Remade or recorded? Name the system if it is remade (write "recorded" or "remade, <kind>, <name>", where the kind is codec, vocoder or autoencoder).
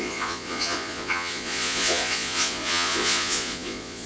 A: remade, vocoder, Vocos